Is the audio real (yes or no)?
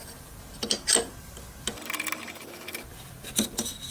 yes